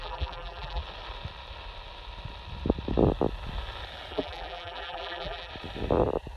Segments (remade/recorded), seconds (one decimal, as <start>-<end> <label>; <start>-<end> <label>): 0.0-0.8 remade; 0.8-4.1 recorded; 4.1-5.5 remade; 5.5-6.4 recorded